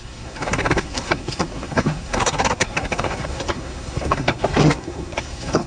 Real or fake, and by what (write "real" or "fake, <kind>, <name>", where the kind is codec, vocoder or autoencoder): fake, codec, SNAC